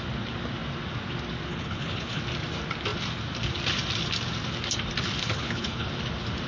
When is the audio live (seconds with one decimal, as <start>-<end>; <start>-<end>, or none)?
0.0-1.5; 2.2-5.2; 5.9-6.5